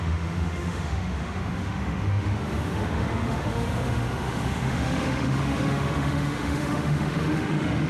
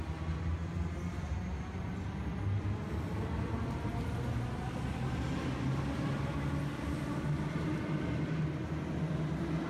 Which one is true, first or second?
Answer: second